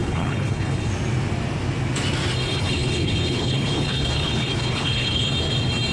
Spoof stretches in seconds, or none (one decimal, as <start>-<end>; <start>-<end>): 0.0-0.9; 2.5-5.3